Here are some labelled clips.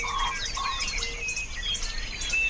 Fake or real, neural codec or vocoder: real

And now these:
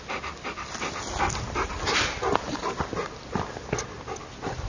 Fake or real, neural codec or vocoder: real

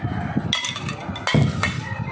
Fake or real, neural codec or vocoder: real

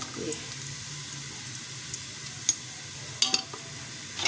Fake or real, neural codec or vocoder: real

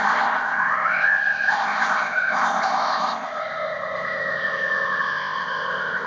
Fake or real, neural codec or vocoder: fake, codec, ZipCodec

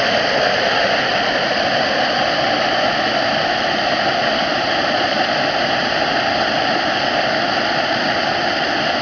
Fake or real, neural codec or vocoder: real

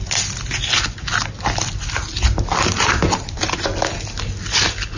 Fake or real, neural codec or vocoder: real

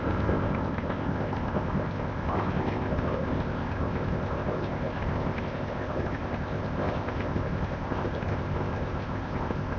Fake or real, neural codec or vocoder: fake, codec, ZipCodec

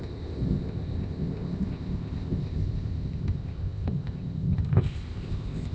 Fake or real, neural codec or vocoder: fake, codec, ZipCodec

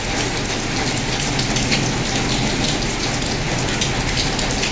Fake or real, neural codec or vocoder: real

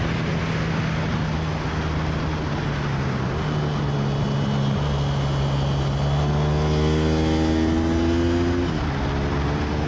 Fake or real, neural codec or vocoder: real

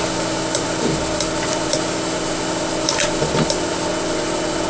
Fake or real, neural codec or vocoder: real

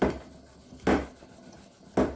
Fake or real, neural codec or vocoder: real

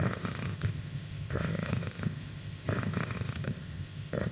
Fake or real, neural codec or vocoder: fake, codec, ZipCodec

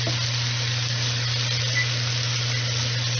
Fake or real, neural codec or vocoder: real